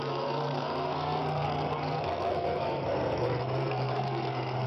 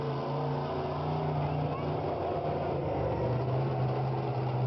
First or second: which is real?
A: second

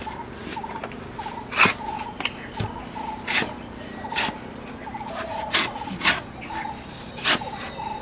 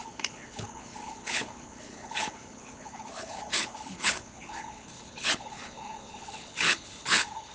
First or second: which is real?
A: first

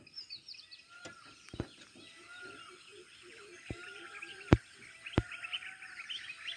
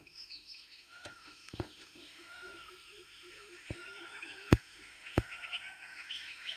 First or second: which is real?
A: first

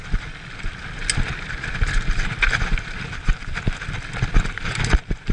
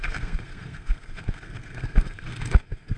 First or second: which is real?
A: first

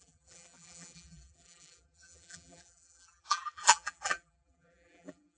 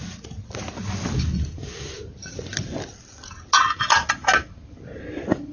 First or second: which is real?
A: second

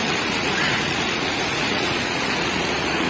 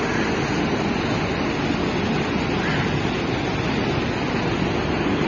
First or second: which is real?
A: second